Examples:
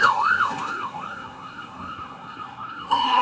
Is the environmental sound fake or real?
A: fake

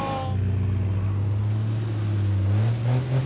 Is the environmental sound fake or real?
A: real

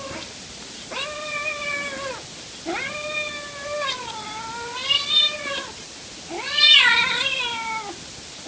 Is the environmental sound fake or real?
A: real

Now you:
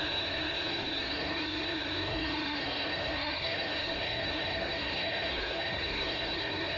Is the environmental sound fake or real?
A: fake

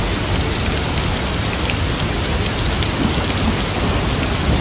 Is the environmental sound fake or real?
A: real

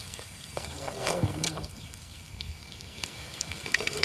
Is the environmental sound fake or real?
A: fake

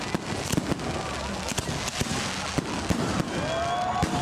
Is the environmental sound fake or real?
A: real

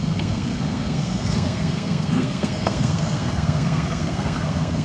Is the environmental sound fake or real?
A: fake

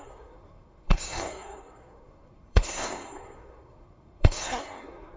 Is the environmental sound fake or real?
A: fake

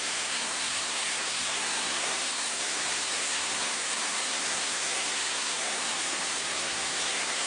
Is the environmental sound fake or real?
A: fake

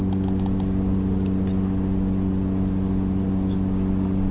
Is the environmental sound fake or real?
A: real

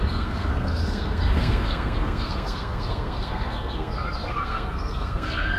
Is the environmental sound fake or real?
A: fake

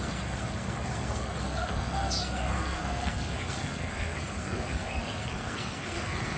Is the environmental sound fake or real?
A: fake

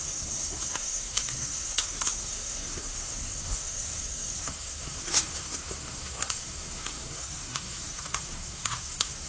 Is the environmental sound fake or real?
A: fake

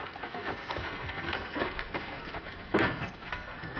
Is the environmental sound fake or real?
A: fake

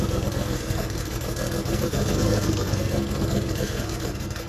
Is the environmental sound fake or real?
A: fake